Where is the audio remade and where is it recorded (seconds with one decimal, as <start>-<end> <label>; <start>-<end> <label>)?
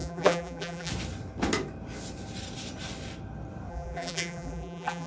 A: 0.0-0.9 remade; 0.9-3.7 recorded; 3.7-5.1 remade